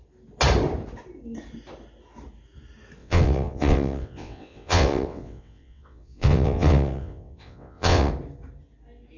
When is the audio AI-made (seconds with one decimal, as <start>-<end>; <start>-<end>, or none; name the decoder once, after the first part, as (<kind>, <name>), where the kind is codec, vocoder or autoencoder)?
3.0-8.1 (vocoder, WaveNeXt)